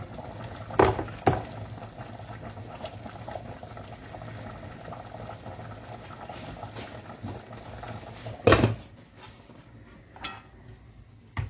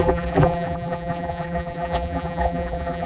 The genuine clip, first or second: first